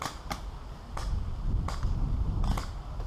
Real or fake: real